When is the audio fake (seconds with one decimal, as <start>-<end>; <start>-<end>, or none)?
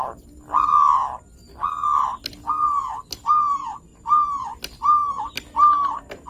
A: none